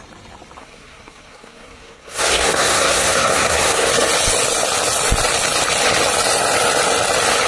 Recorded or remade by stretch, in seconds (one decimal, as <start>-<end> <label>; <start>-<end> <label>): 0.0-0.6 recorded; 0.6-3.9 remade; 3.9-7.5 recorded